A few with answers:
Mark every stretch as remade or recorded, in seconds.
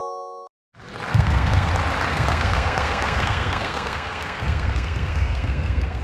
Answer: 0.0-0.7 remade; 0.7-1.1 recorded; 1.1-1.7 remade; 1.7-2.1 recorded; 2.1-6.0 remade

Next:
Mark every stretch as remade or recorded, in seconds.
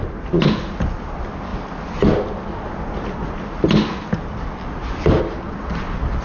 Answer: 0.0-6.2 recorded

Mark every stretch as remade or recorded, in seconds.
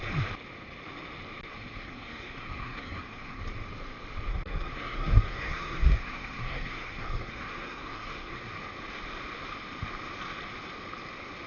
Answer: 0.0-1.5 recorded; 1.5-3.4 remade; 3.4-4.3 recorded; 4.3-8.4 remade; 8.4-11.5 recorded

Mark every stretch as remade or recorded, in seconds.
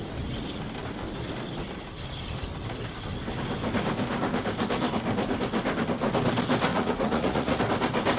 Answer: 0.0-6.7 recorded; 6.7-7.6 remade; 7.6-8.2 recorded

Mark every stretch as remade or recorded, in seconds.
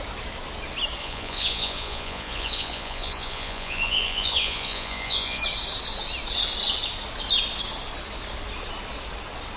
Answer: 0.0-1.0 recorded; 1.0-5.4 remade; 5.4-9.6 recorded